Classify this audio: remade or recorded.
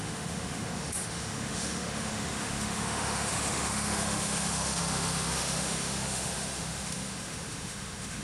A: remade